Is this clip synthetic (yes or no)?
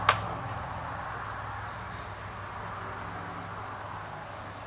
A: no